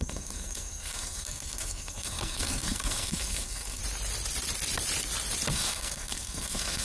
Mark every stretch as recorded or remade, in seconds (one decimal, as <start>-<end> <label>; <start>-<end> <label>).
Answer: 0.0-3.8 remade; 3.8-5.5 recorded; 5.5-6.8 remade